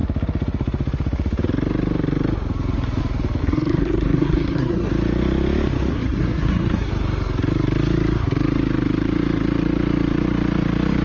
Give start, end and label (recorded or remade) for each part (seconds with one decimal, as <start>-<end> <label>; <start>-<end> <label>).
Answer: 0.0-3.4 recorded; 3.4-4.9 remade; 4.9-5.9 recorded; 5.9-6.9 remade; 6.9-11.0 recorded